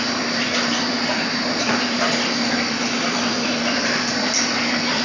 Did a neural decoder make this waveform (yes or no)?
yes